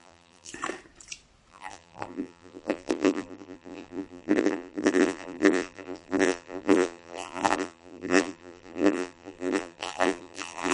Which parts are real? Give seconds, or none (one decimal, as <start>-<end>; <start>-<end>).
0.5-1.5

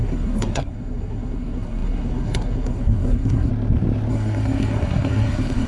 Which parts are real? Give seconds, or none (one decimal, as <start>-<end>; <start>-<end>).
3.5-4.1

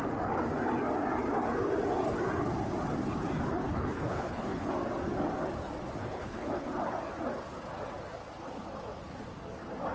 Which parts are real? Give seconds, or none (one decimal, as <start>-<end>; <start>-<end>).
0.0-3.5; 4.7-6.0; 6.7-9.9

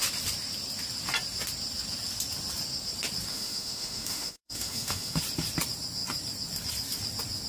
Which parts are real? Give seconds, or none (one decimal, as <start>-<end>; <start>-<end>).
0.0-3.3; 5.2-7.5

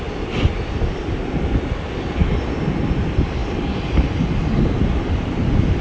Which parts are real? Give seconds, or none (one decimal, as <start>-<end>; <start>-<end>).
0.0-5.8

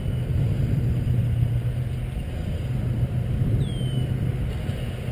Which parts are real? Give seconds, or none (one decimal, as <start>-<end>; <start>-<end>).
0.0-5.1

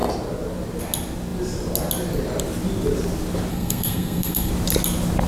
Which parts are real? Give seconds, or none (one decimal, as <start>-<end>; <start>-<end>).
0.0-3.5; 4.5-5.3